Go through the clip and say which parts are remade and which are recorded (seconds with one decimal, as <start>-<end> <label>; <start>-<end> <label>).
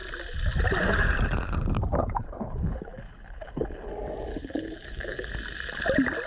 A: 0.0-2.0 recorded; 2.0-3.9 remade; 3.9-4.3 recorded; 4.3-5.3 remade; 5.3-6.3 recorded